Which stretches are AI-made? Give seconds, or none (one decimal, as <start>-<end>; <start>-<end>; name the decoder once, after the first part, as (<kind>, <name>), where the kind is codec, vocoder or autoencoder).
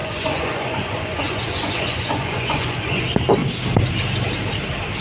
0.0-3.0 (vocoder, Vocos)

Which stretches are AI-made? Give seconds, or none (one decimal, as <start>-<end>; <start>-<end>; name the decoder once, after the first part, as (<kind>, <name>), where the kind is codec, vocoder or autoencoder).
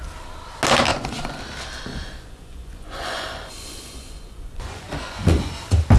0.9-1.4 (vocoder, Vocos); 1.9-5.5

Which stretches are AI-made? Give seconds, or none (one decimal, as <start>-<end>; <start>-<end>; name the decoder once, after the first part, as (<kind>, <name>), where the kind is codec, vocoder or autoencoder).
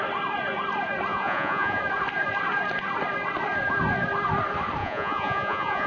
1.1-1.8 (vocoder, Vocos); 4.8-5.9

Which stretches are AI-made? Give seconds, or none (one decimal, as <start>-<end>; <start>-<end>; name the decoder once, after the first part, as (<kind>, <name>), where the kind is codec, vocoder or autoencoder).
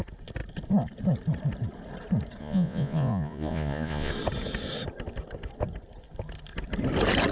2.4-4.1 (vocoder, Vocos)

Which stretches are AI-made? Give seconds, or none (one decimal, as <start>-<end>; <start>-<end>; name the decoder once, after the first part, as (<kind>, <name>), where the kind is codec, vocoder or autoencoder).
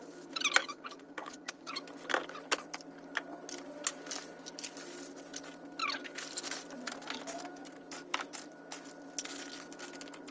0.6-1.7 (vocoder, Vocos)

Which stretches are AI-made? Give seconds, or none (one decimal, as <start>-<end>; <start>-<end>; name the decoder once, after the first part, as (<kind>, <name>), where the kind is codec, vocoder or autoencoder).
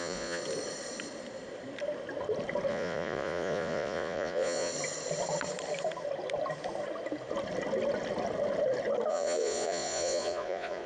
0.0-0.4 (vocoder, Vocos); 2.7-4.7; 9.1-10.9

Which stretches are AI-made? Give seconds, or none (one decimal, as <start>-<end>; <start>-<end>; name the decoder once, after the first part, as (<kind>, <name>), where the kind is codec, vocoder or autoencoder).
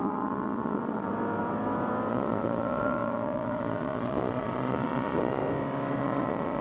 0.0-1.1 (vocoder, Vocos); 2.1-5.4; 6.0-6.6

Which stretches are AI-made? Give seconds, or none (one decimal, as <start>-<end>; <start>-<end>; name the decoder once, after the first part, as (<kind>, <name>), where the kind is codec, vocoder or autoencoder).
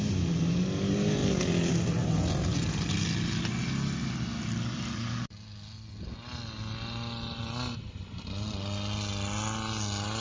none